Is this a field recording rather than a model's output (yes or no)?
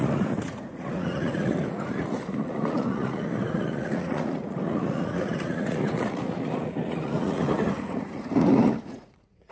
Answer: no